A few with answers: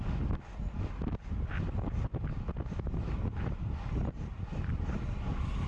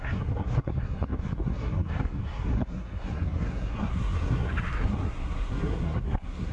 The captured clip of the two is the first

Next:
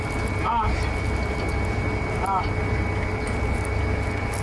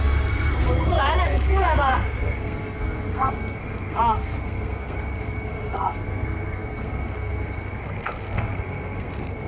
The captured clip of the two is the first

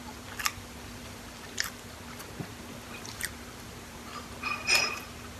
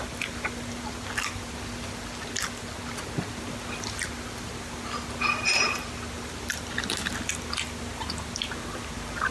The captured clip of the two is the second